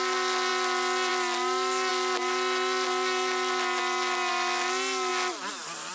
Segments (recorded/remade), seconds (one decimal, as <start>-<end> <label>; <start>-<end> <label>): 0.0-5.9 recorded